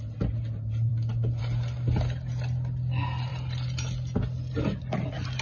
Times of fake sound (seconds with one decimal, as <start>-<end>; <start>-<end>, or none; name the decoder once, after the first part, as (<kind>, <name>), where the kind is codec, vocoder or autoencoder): none